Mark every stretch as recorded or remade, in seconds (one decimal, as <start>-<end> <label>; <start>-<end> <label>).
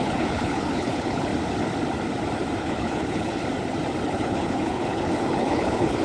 0.0-1.3 remade; 1.3-2.6 recorded; 2.6-3.4 remade; 3.4-4.1 recorded; 4.1-6.0 remade